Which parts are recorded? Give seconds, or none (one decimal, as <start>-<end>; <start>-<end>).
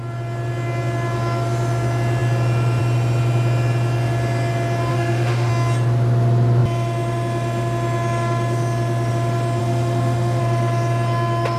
0.0-4.9; 5.5-9.6; 10.4-11.6